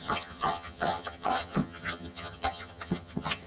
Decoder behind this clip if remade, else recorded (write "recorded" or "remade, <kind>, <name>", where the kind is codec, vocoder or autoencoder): remade, vocoder, HiFi-GAN